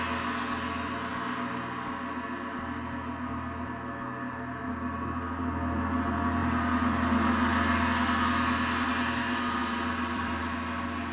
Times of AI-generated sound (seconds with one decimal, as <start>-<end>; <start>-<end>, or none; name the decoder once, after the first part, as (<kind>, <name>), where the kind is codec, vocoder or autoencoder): 9.6-10.4 (vocoder, BigVGAN v2)